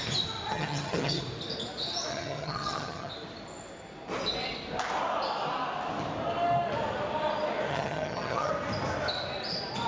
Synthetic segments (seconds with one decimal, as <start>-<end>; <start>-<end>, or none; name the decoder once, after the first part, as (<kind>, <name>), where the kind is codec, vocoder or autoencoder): 0.5-1.2 (vocoder, HiFi-GAN); 2.1-3.1; 7.7-8.5